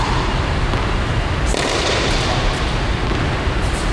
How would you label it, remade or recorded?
recorded